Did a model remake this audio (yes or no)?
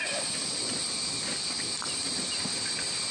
no